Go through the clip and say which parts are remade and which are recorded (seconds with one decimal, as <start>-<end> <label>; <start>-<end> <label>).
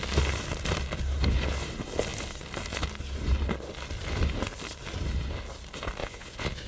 0.0-6.0 recorded; 6.0-6.7 remade